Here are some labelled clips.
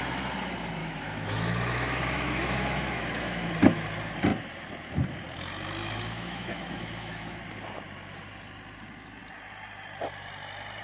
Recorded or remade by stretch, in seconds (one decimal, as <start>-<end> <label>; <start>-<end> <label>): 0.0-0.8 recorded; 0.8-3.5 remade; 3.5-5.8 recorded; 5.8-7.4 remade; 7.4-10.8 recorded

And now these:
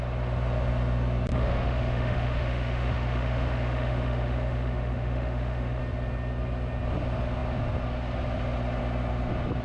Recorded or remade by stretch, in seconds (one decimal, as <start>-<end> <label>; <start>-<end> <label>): 0.0-1.3 recorded; 1.3-5.8 remade; 5.8-9.6 recorded

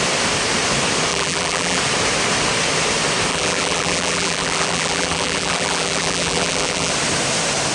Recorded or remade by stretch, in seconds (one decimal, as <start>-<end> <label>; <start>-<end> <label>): 0.0-1.1 recorded; 1.1-1.8 remade; 1.8-3.3 recorded; 3.3-6.9 remade; 6.9-7.7 recorded

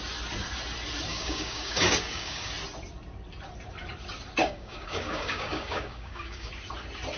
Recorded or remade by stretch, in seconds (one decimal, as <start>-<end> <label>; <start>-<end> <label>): 0.0-1.1 recorded; 1.1-2.5 remade; 2.5-4.4 recorded; 4.4-6.5 remade; 6.5-7.2 recorded

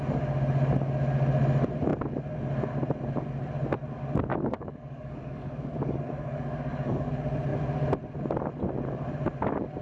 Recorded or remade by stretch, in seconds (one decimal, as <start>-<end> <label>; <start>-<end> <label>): 0.0-4.3 recorded; 4.3-7.1 remade; 7.1-9.8 recorded

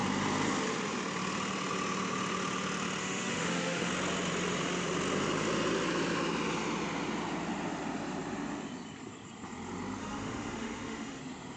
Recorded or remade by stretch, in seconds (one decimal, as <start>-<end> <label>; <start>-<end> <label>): 0.0-3.0 recorded; 3.0-3.9 remade; 3.9-10.0 recorded; 10.0-11.2 remade; 11.2-11.6 recorded

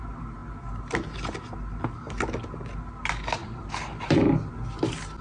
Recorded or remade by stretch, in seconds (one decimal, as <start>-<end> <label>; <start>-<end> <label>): 0.0-3.4 recorded; 3.4-4.5 remade; 4.5-5.2 recorded

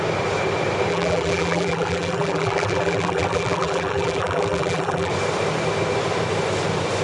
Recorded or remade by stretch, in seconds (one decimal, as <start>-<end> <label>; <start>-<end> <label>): 0.0-0.9 recorded; 0.9-5.1 remade; 5.1-7.0 recorded